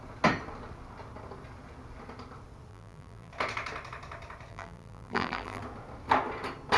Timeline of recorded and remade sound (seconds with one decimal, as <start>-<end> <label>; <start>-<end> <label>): 0.0-2.7 recorded; 2.7-3.3 remade; 3.3-4.5 recorded; 4.5-5.6 remade; 5.6-6.8 recorded